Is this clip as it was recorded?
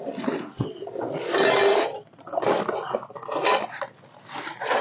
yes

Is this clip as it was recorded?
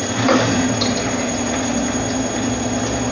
yes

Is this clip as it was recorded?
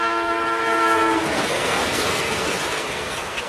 no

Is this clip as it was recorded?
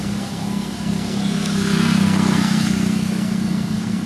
no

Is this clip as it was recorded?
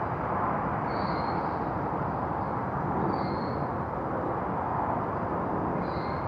yes